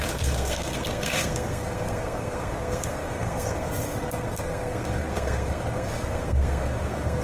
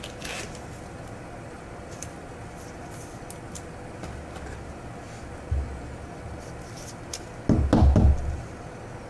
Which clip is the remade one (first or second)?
first